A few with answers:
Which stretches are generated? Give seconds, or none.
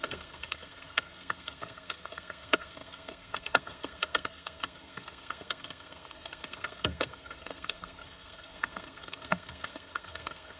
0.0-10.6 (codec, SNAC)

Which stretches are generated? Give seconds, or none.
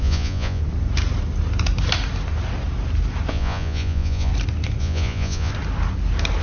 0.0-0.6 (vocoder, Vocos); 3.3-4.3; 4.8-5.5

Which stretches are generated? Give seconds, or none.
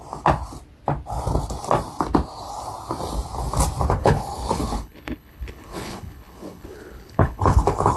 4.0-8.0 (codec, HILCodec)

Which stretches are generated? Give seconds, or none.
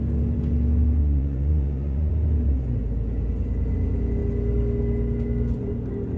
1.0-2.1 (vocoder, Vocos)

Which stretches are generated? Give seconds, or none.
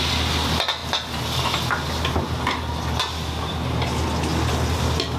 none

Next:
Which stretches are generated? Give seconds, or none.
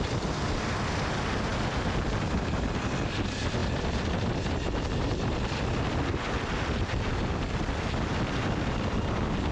none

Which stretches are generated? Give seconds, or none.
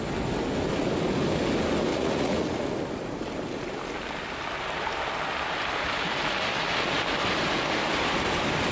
1.9-2.6 (vocoder, Vocos)